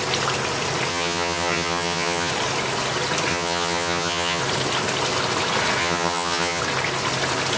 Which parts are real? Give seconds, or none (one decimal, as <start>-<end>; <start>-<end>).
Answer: 0.0-0.9; 2.3-3.3; 4.4-5.8; 6.6-7.6